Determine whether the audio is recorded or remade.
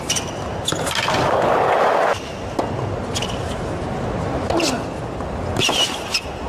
recorded